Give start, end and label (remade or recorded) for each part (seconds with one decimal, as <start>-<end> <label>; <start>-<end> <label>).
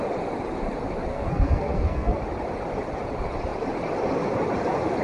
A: 0.0-1.1 recorded; 1.1-2.2 remade; 2.2-5.0 recorded